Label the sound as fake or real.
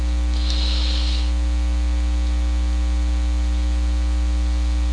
real